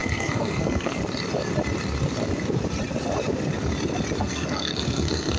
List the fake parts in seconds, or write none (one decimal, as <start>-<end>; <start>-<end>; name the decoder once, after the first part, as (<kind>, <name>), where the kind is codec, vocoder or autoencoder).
0.0-1.0 (codec, SNAC); 4.2-5.4